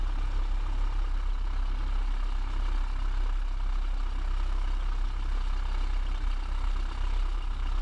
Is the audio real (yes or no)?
yes